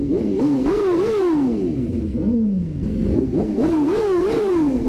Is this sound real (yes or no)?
no